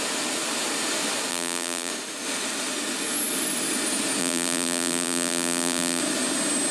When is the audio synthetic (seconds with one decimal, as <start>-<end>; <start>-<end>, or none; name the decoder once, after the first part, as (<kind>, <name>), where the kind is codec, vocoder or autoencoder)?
1.3-1.9 (vocoder, BigVGAN v2); 4.2-6.0